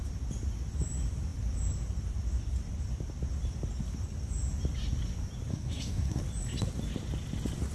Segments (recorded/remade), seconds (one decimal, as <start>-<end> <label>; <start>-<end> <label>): 0.0-5.5 recorded; 5.5-6.2 remade; 6.2-7.7 recorded